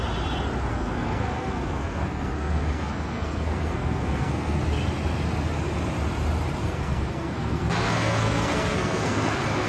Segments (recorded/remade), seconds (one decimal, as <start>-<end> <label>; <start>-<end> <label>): 0.0-0.7 recorded; 0.7-4.6 remade; 4.6-6.6 recorded; 6.6-9.7 remade